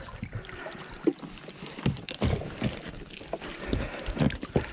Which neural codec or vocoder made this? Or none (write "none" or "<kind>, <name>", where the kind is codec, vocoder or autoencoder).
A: none